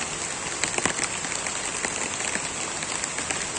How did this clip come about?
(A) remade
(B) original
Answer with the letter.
B